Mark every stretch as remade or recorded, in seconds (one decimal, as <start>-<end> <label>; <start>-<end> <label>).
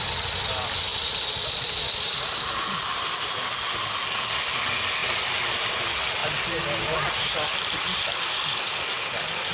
0.0-9.5 recorded